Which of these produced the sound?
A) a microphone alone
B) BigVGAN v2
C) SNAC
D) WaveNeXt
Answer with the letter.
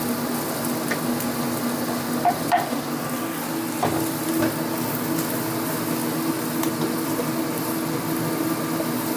A